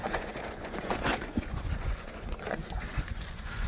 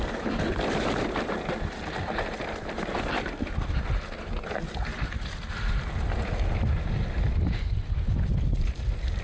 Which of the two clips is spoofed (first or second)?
first